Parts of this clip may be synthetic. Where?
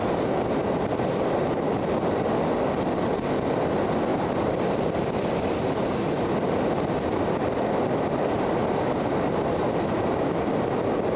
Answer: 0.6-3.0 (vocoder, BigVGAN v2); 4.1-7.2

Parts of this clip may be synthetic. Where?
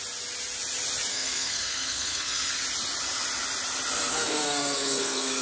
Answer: 1.1-2.5 (codec, SNAC); 4.1-5.4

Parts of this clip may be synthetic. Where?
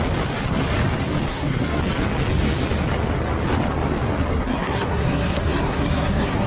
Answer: 1.3-1.8 (codec, SNAC); 4.3-6.5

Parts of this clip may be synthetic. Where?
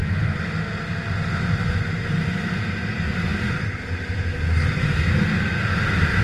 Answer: none